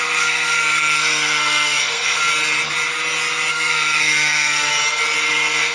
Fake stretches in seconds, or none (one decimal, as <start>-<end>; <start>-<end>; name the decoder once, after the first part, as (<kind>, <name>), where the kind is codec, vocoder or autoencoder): 0.0-2.2 (codec, SNAC); 3.5-4.7; 5.3-5.7